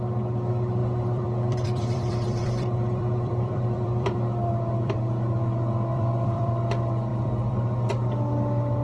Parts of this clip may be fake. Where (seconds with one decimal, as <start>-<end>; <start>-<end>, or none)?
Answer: 0.8-5.0; 5.9-6.5; 7.1-7.9